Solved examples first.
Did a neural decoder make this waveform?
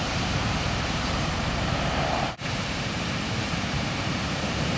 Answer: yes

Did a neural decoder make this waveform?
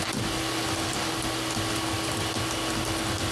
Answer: no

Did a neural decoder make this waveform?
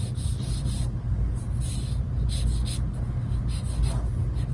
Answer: no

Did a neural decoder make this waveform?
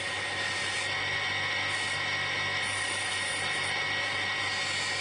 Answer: no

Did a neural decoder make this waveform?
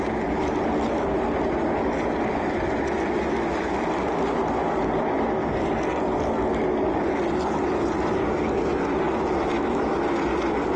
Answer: no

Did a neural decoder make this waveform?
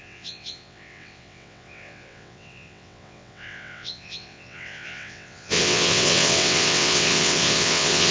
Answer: yes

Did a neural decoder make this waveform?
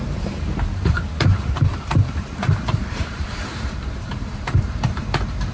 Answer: yes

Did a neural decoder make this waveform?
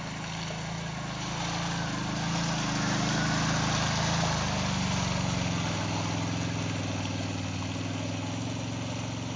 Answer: no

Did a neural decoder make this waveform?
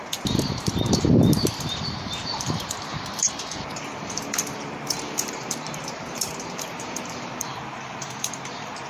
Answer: yes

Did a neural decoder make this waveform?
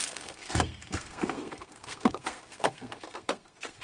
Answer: yes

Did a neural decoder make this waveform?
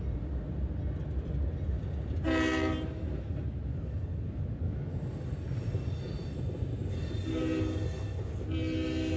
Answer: no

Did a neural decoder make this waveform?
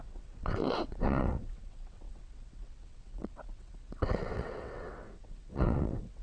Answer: yes